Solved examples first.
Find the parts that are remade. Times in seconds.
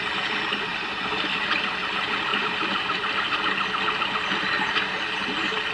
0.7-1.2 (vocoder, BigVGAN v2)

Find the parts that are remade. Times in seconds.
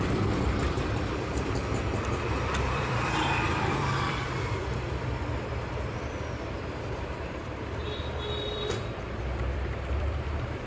0.0-7.8 (vocoder, BigVGAN v2); 8.4-10.7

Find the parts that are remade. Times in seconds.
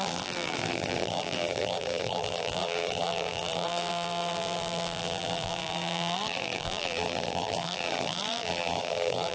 0.0-9.3 (vocoder, BigVGAN v2)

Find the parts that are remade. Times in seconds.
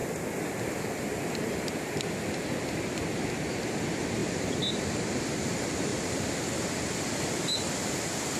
0.0-2.8 (vocoder, BigVGAN v2); 4.2-5.2; 5.9-6.4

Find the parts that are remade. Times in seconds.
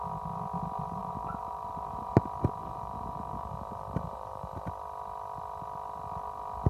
1.0-2.1 (vocoder, BigVGAN v2); 2.6-4.6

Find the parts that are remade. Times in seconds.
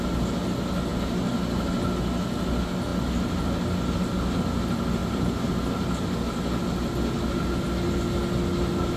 5.0-5.5 (vocoder, BigVGAN v2)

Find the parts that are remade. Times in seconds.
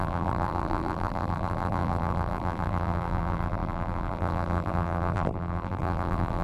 0.0-6.4 (vocoder, BigVGAN v2)